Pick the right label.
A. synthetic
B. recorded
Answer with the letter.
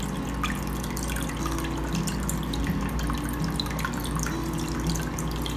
B